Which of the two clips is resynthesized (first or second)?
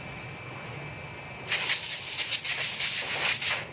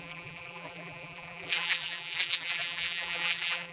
second